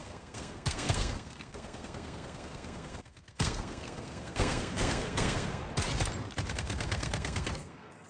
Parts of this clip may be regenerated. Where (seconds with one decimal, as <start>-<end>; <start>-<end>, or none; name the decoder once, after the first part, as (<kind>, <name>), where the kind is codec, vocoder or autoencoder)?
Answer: 0.0-5.6 (codec, SNAC); 6.5-8.1